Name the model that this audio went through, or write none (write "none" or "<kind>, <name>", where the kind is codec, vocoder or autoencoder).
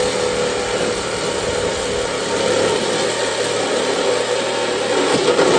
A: none